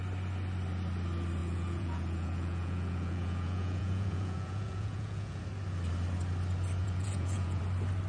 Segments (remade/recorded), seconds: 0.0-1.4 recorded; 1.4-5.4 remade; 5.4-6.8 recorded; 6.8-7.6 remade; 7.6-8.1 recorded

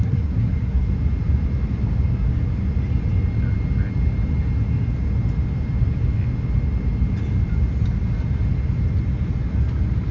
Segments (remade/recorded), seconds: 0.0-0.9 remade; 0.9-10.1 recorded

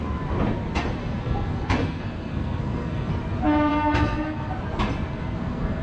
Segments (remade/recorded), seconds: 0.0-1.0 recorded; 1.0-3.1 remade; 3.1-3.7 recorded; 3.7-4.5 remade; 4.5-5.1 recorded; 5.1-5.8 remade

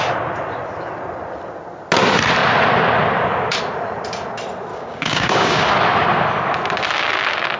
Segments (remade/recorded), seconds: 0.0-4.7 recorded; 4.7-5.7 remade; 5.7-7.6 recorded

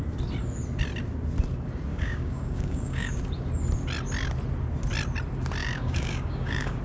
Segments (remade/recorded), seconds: 0.0-1.9 recorded; 1.9-3.2 remade; 3.2-5.6 recorded; 5.6-6.8 remade

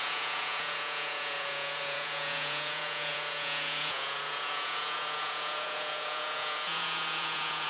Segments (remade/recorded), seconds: 0.0-7.7 remade